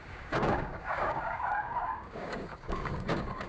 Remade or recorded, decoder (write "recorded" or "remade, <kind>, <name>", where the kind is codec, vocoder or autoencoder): remade, codec, DAC